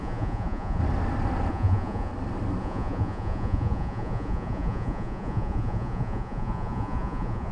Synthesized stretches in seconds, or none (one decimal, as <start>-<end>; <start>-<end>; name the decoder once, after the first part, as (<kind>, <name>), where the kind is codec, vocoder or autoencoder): 0.0-0.8 (vocoder, Vocos); 1.5-2.1; 2.6-7.5